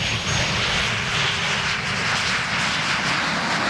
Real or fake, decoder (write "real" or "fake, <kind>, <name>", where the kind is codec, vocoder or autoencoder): real